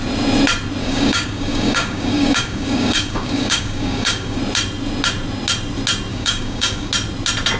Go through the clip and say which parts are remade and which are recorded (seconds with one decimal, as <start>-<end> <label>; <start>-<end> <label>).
0.0-0.8 recorded; 0.8-4.4 remade; 4.4-6.1 recorded; 6.1-6.9 remade; 6.9-7.6 recorded